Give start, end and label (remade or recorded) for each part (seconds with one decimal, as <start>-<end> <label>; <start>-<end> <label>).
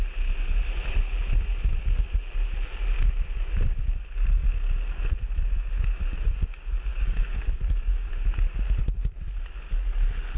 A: 0.0-6.9 recorded; 6.9-8.1 remade; 8.1-10.4 recorded